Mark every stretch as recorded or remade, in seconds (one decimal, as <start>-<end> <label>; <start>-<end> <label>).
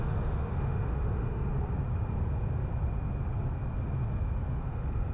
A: 0.0-1.5 remade; 1.5-4.6 recorded; 4.6-5.1 remade